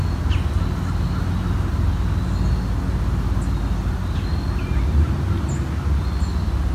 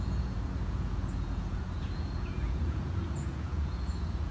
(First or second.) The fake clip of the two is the second